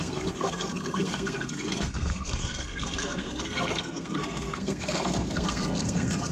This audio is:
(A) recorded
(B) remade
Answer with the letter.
B